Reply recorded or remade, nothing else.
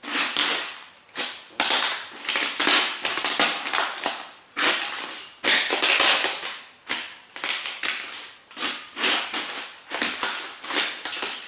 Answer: recorded